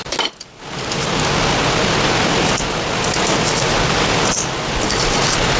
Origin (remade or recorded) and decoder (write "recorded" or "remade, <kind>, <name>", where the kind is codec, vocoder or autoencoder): recorded